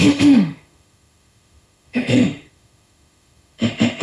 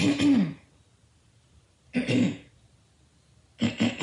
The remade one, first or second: first